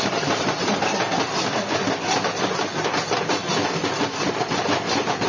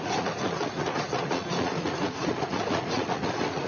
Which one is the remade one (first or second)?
second